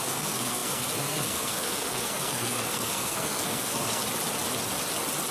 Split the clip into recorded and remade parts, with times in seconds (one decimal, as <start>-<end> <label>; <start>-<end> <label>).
0.0-4.0 remade; 4.0-5.3 recorded